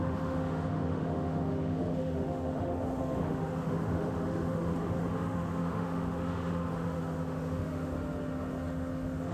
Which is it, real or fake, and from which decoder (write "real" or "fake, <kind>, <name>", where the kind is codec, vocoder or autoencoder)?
fake, autoencoder, DAC-VAE